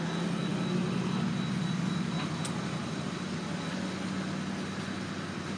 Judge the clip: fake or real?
real